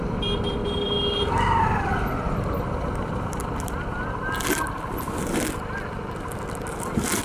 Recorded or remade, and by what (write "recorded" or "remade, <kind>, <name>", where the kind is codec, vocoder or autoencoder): recorded